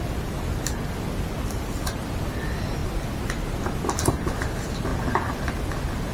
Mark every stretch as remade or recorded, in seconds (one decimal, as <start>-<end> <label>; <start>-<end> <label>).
0.0-4.9 recorded; 4.9-5.5 remade; 5.5-6.1 recorded